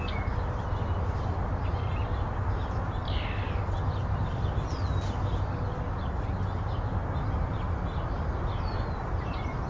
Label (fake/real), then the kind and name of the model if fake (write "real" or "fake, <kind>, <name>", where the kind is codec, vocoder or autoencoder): real